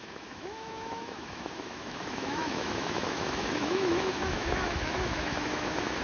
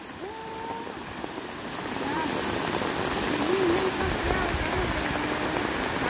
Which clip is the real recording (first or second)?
second